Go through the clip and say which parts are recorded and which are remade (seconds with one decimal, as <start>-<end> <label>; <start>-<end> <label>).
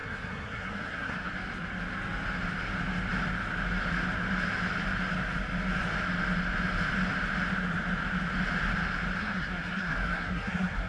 0.0-1.3 remade; 1.3-9.2 recorded; 9.2-10.9 remade